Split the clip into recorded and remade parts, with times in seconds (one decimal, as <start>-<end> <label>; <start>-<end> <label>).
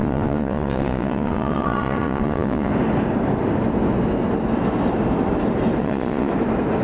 0.0-2.7 remade; 2.7-5.8 recorded; 5.8-6.3 remade; 6.3-6.8 recorded